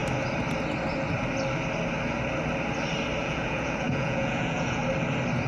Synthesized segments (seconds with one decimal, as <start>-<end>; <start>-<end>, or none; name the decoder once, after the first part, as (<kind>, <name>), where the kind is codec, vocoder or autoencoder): 3.2-4.8 (vocoder, Vocos)